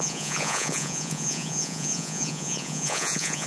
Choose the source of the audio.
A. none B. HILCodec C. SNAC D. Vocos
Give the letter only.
D